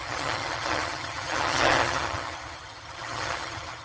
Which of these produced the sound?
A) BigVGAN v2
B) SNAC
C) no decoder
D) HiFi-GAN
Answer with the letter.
D